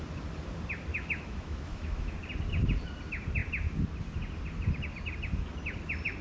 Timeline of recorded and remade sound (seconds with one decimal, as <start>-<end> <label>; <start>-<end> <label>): 0.0-0.9 recorded; 0.9-2.1 remade; 2.1-6.2 recorded